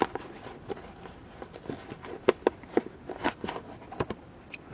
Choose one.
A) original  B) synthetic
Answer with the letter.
A